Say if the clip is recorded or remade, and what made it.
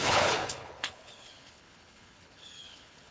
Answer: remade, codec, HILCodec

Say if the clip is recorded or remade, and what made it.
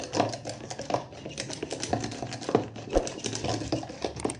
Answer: recorded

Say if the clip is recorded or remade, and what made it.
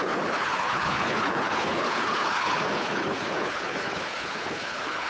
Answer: remade, codec, HILCodec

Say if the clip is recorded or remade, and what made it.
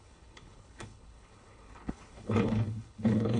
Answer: remade, codec, HILCodec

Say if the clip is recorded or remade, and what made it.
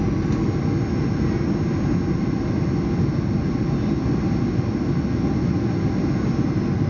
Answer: recorded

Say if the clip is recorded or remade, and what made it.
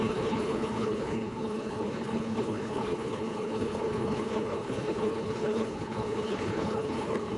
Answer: remade, codec, HILCodec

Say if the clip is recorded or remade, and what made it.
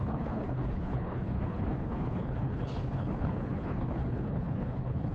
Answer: remade, codec, HILCodec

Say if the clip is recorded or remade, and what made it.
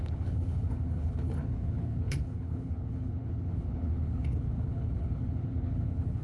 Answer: remade, codec, HILCodec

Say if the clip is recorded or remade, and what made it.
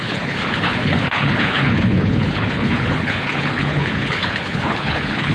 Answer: remade, codec, HILCodec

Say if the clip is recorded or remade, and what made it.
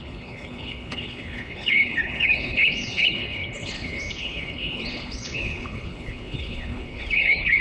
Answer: remade, codec, HILCodec